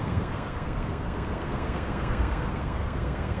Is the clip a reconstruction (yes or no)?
yes